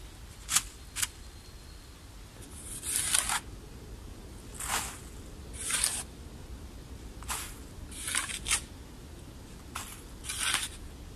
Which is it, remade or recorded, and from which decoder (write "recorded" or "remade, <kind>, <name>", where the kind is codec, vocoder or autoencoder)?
recorded